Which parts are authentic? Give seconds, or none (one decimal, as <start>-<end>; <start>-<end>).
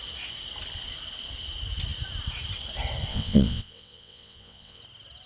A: 0.0-3.1; 4.8-5.3